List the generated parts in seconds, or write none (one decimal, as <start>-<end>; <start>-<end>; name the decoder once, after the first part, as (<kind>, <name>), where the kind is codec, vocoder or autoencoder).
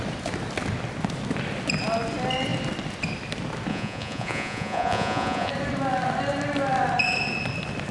3.7-5.5 (vocoder, Vocos)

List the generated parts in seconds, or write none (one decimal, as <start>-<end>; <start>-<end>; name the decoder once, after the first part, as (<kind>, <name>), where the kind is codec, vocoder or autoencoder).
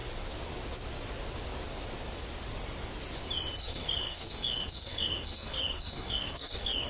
3.6-6.9 (codec, SNAC)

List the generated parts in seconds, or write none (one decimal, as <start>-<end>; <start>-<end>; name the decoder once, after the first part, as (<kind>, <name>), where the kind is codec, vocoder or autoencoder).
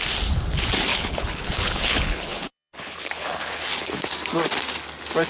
0.9-4.1 (codec, HILCodec)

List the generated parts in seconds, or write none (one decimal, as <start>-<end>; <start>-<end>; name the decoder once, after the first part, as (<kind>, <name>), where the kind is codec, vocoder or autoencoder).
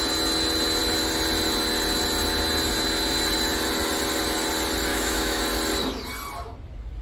4.9-5.4 (autoencoder, DAC-VAE)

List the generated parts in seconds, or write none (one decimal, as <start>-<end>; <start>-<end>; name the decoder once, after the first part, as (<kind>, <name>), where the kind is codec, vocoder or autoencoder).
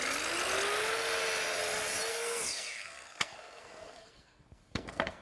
2.1-5.2 (codec, SNAC)